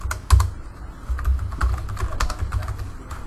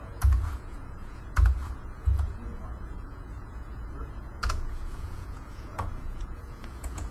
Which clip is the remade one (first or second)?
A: second